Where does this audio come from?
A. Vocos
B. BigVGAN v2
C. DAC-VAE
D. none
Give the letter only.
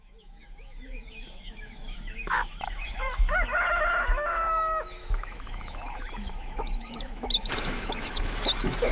C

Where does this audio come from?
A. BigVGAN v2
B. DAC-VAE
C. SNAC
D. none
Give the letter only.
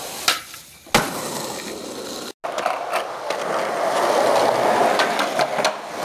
D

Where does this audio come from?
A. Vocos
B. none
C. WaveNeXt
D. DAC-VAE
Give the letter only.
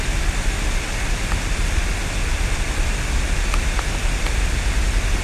B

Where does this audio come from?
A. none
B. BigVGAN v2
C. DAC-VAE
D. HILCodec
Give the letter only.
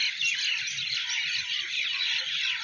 A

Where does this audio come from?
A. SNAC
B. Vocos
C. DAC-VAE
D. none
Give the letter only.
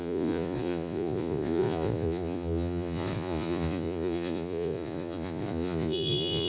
B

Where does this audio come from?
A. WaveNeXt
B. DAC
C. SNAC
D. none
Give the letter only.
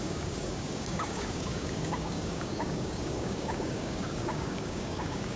B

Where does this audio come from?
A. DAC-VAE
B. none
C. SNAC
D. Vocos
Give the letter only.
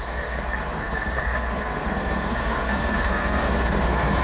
C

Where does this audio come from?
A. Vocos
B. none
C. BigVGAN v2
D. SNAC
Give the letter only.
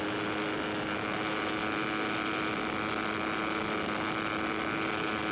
B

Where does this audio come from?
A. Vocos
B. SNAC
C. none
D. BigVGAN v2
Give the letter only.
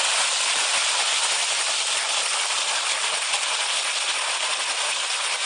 D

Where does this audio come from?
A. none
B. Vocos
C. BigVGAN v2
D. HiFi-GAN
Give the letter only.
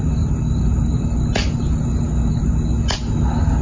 A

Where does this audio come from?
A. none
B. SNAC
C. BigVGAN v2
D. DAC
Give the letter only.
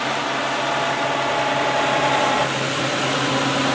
A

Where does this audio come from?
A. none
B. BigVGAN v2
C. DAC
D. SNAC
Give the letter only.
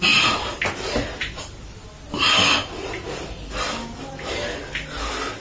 A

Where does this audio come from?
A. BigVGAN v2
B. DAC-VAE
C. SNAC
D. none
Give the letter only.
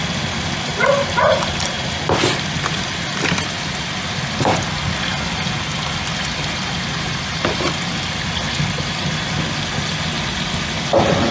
D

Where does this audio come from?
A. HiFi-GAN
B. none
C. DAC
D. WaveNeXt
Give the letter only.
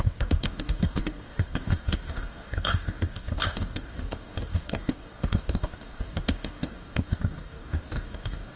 C